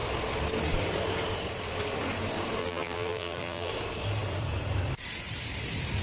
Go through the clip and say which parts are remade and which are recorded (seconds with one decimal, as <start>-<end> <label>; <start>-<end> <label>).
0.0-2.6 recorded; 2.6-3.7 remade; 3.7-6.0 recorded